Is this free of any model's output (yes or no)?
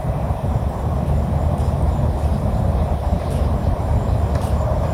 yes